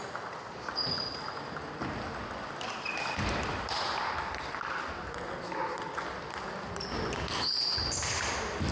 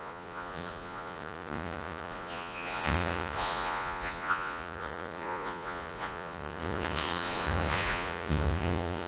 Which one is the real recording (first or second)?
first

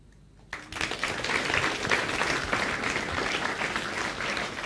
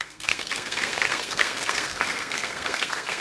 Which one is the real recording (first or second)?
first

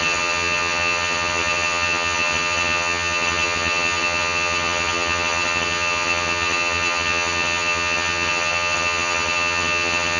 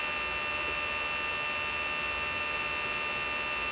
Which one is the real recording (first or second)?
second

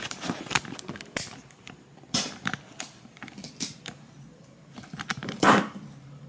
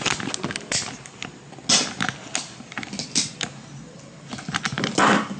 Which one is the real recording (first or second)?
second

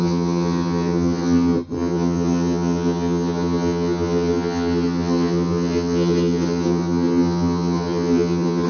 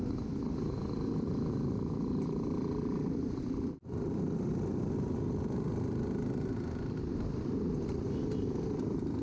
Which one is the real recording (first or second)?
second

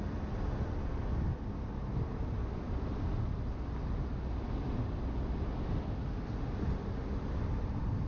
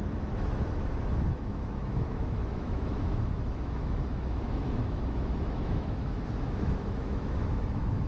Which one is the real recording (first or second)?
first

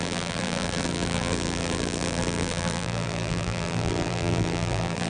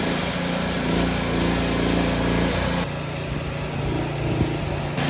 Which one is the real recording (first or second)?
second